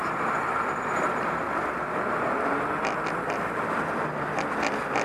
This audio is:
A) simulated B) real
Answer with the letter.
B